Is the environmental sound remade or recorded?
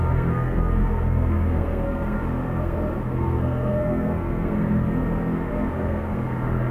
remade